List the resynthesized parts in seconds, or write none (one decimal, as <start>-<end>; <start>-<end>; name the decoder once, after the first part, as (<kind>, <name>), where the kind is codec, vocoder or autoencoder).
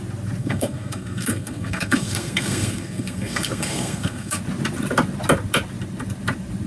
0.4-4.4 (codec, SNAC)